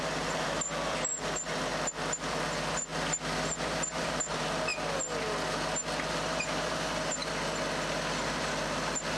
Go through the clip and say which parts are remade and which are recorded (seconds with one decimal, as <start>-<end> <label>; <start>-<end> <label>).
0.0-1.7 remade; 1.7-2.3 recorded; 2.3-2.9 remade; 2.9-3.5 recorded; 3.5-4.7 remade; 4.7-6.1 recorded; 6.1-7.2 remade; 7.2-8.2 recorded; 8.2-9.2 remade